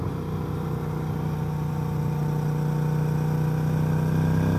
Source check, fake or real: real